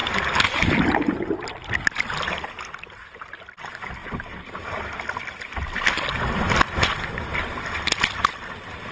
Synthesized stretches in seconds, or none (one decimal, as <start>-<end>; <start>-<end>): none